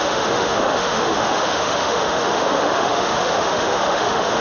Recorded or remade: remade